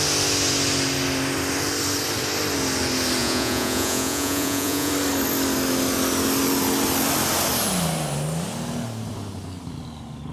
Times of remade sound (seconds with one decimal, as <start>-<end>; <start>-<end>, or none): 3.2-4.9